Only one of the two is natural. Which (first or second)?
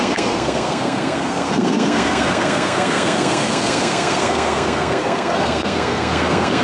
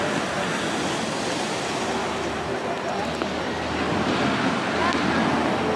second